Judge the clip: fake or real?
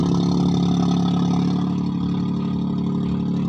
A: real